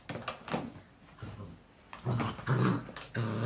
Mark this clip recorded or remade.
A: recorded